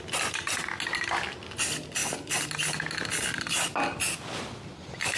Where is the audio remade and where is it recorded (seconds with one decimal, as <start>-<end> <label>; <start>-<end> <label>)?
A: 0.0-5.2 recorded